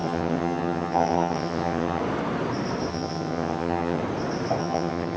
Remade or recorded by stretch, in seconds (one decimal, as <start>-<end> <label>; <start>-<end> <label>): 0.0-2.0 remade; 2.0-2.9 recorded; 2.9-4.0 remade; 4.0-4.6 recorded; 4.6-5.2 remade